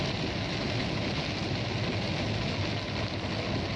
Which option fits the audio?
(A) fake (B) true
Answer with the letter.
B